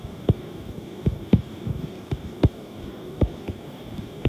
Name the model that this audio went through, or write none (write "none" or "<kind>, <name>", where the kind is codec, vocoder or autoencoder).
codec, DAC